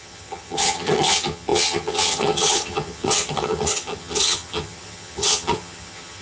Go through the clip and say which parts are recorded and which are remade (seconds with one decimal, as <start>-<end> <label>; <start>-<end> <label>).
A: 0.0-6.2 remade